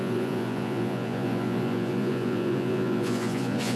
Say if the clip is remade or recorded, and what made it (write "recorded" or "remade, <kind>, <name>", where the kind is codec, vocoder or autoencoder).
remade, vocoder, Vocos